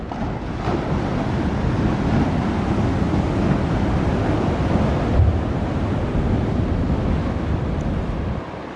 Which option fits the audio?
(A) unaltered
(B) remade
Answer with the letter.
A